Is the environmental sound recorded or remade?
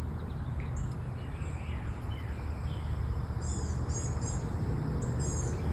recorded